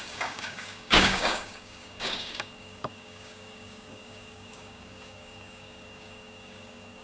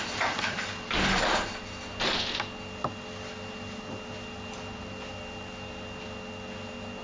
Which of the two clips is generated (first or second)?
first